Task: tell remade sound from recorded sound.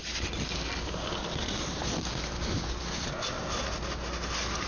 recorded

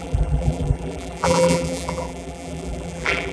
remade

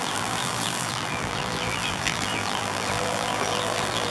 remade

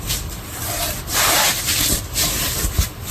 recorded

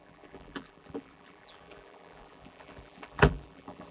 remade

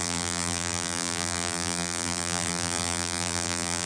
remade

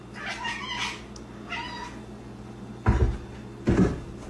recorded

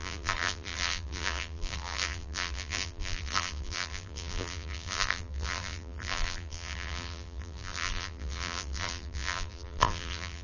remade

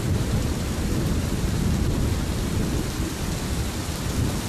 remade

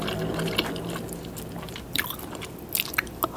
recorded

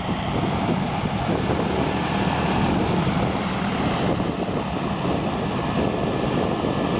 recorded